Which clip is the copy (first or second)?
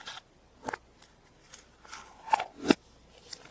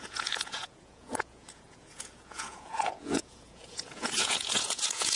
second